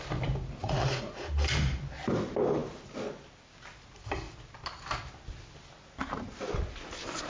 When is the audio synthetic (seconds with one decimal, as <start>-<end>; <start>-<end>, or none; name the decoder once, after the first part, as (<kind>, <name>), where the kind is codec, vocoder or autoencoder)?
0.6-1.3 (vocoder, Vocos)